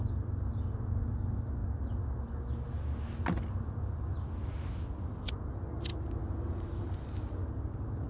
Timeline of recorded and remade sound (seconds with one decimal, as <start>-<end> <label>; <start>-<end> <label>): 0.0-8.1 recorded

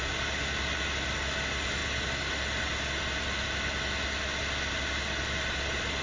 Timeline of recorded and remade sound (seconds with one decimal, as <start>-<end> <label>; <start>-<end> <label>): 0.0-6.0 recorded

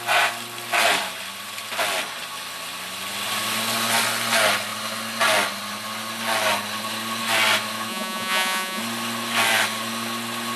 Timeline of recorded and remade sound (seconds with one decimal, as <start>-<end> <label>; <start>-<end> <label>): 0.0-7.9 recorded; 7.9-8.8 remade; 8.8-10.6 recorded

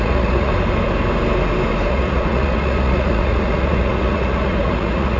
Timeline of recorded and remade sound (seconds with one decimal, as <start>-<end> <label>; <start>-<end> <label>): 0.0-0.5 remade; 0.5-1.9 recorded; 1.9-5.2 remade

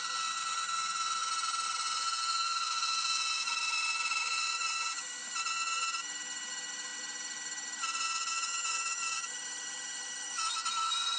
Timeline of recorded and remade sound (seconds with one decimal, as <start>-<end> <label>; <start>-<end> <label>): 0.0-11.2 recorded

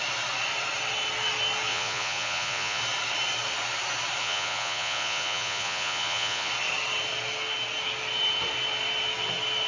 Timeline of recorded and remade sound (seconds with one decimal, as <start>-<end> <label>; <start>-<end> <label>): 0.0-1.7 recorded; 1.7-2.8 remade; 2.8-4.2 recorded; 4.2-6.5 remade; 6.5-9.7 recorded

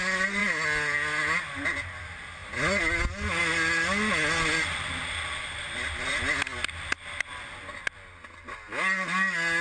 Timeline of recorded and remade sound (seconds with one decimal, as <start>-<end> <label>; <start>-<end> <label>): 0.0-9.6 recorded

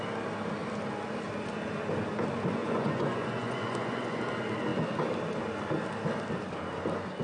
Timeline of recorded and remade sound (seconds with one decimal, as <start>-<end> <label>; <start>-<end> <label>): 0.0-2.6 recorded; 2.6-4.2 remade; 4.2-7.2 recorded